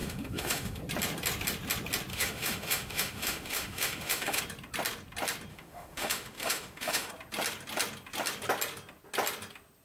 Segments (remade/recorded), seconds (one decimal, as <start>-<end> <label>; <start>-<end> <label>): 0.0-0.8 remade; 0.8-2.1 recorded; 2.1-4.4 remade; 4.4-5.5 recorded; 5.5-7.1 remade; 7.1-9.8 recorded